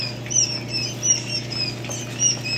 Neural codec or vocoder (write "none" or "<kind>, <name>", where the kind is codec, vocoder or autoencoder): none